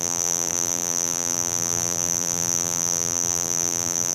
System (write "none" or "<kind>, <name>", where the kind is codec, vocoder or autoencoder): vocoder, BigVGAN v2